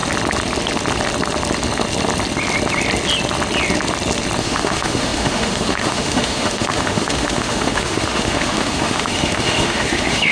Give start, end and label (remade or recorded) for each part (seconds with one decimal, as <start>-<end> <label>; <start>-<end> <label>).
0.0-4.4 recorded; 4.4-10.3 remade